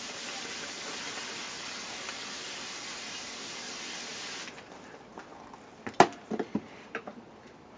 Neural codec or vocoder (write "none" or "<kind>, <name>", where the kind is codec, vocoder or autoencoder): none